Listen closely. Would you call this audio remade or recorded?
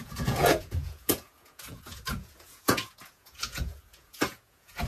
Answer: remade